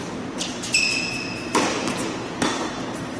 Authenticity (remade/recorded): recorded